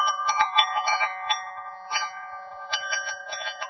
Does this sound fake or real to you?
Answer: fake